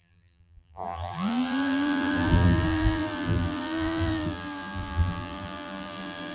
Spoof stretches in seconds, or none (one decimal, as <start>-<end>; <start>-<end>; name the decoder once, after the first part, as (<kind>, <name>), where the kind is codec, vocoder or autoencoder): 0.0-6.3 (vocoder, BigVGAN v2)